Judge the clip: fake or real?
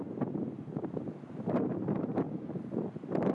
real